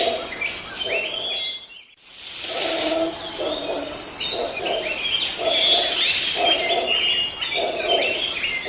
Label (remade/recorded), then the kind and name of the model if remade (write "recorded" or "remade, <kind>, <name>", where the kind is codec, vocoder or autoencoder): recorded